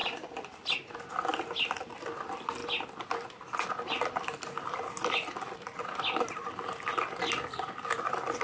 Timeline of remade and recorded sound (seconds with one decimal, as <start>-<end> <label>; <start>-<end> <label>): 0.0-8.4 recorded